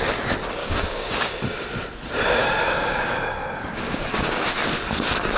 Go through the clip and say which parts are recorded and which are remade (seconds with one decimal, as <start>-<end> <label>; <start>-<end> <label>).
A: 0.0-0.6 recorded; 0.6-1.3 remade; 1.3-2.4 recorded; 2.4-4.5 remade; 4.5-5.4 recorded